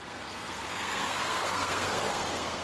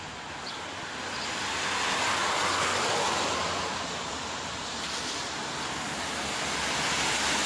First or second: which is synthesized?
first